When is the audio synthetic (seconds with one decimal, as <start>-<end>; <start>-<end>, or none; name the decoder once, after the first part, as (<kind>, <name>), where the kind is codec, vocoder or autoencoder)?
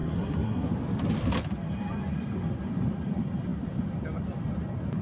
0.0-0.7 (codec, SNAC)